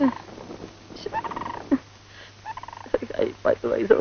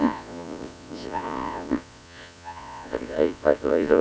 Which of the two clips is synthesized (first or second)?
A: second